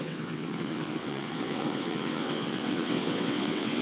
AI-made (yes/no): yes